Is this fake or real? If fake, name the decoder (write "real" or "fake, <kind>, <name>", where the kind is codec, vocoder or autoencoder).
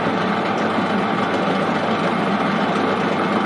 real